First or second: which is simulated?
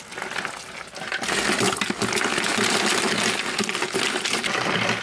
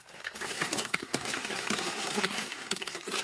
second